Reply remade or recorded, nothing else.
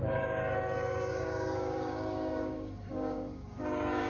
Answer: remade